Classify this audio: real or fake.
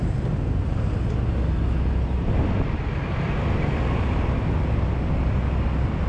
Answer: real